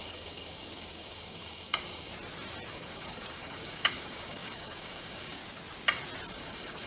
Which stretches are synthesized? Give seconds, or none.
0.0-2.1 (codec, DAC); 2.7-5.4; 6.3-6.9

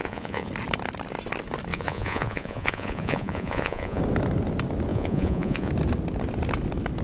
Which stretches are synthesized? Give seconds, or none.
0.0-0.5 (vocoder, Vocos); 1.7-4.0; 4.9-5.7

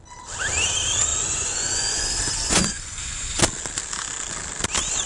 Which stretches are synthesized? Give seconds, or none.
1.1-3.4 (vocoder, Vocos)

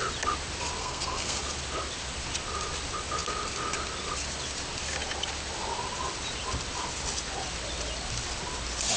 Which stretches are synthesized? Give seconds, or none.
0.8-1.4 (codec, SNAC)

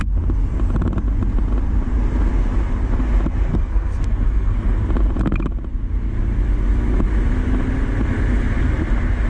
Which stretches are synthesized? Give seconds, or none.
3.5-4.8 (codec, SNAC)

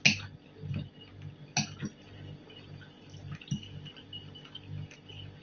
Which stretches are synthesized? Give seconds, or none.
none

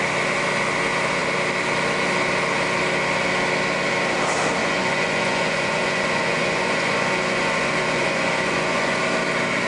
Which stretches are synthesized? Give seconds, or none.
4.6-9.0 (vocoder, Vocos)